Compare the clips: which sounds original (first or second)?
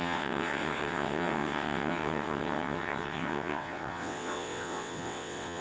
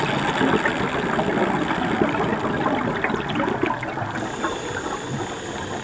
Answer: second